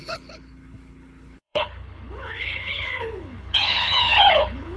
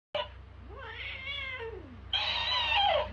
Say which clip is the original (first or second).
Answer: second